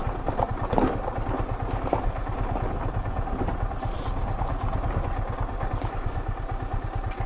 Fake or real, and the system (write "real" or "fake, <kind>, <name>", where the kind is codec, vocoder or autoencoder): real